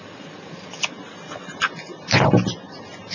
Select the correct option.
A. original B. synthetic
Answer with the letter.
A